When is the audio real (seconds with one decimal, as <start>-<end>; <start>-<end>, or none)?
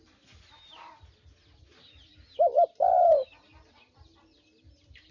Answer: 0.0-5.1